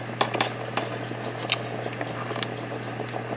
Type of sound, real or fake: real